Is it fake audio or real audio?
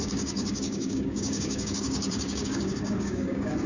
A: fake